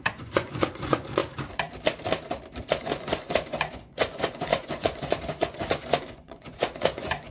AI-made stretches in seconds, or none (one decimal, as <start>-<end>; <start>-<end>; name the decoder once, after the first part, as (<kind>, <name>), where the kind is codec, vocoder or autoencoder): 0.0-1.2 (vocoder, Vocos); 2.8-7.3